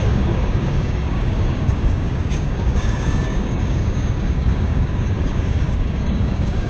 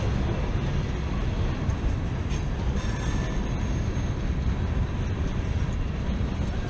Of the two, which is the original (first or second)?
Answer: second